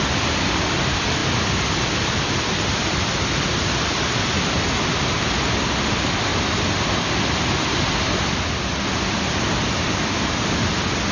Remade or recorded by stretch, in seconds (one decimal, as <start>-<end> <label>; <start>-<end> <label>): 0.0-6.3 remade; 6.3-9.4 recorded; 9.4-11.1 remade